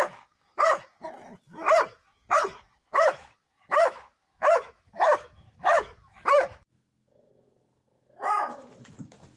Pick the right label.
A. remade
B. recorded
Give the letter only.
A